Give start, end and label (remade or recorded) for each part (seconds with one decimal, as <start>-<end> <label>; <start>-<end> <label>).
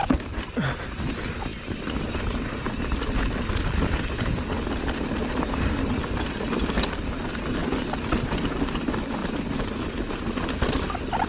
0.0-1.5 recorded; 1.5-2.5 remade; 2.5-9.2 recorded; 9.2-10.2 remade; 10.2-11.3 recorded